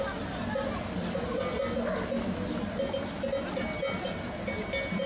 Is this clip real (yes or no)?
yes